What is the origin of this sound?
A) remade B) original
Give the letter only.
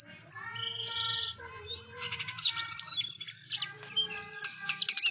B